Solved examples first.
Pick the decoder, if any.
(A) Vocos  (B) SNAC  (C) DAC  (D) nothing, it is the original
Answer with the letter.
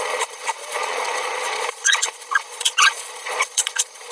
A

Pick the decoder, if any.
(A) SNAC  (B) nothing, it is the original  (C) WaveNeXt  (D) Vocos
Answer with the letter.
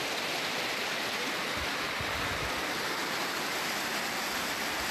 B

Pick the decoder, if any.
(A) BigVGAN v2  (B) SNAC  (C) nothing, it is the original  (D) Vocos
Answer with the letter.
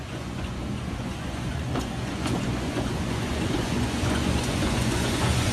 D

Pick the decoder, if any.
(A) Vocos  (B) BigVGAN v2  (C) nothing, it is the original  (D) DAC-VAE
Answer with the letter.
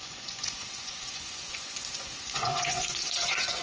A